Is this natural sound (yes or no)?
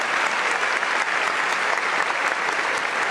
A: yes